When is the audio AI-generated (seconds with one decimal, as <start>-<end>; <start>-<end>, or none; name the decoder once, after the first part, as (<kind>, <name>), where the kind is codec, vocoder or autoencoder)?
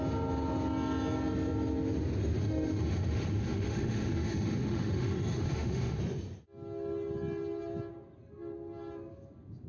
2.4-6.0 (autoencoder, DAC-VAE)